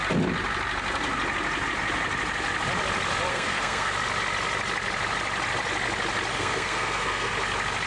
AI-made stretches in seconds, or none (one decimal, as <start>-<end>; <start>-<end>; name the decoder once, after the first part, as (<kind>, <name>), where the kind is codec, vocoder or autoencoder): 3.3-3.9 (codec, SNAC); 6.3-7.3